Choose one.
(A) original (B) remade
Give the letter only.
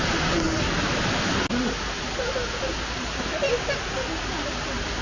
A